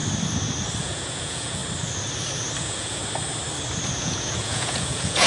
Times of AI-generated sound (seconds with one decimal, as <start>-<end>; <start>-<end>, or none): 0.8-1.6; 2.6-3.0; 4.0-5.3